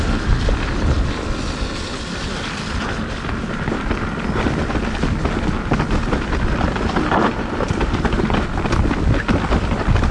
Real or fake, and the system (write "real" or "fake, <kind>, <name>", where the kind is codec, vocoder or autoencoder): real